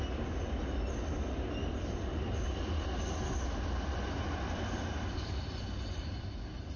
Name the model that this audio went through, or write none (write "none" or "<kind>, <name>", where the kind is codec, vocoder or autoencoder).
none